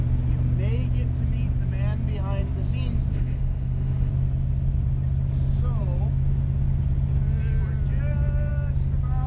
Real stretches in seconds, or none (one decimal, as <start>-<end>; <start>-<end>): 0.0-3.1; 4.1-9.3